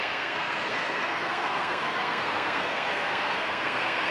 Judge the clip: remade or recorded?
remade